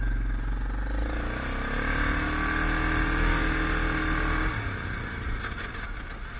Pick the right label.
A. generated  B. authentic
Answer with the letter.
B